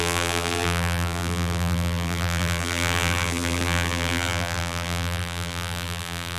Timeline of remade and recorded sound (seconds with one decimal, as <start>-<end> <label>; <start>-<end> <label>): 0.0-6.4 remade